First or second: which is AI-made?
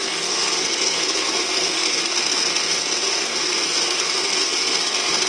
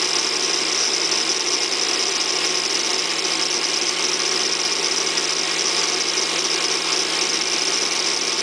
first